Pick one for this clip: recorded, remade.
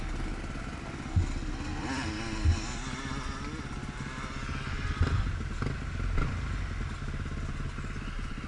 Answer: recorded